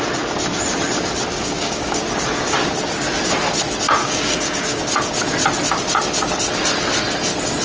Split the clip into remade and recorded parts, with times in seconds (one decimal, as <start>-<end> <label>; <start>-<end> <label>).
0.0-1.3 recorded; 1.3-2.0 remade; 2.0-4.0 recorded; 4.0-4.8 remade; 4.8-7.6 recorded